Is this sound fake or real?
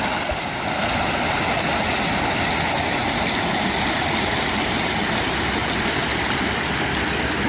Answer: real